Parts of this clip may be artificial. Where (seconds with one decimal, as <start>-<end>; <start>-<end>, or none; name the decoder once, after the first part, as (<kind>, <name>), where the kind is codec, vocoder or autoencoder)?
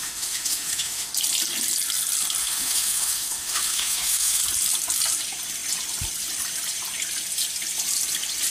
0.0-1.1 (autoencoder, DAC-VAE); 2.4-4.4